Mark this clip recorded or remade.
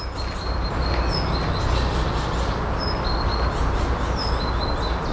recorded